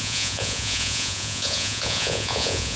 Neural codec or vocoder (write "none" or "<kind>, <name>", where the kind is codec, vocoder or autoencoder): vocoder, Vocos